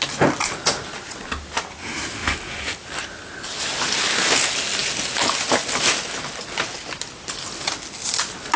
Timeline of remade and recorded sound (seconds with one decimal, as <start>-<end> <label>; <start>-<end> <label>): 0.0-8.6 recorded